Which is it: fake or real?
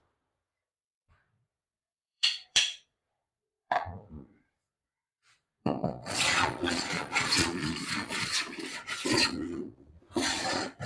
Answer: fake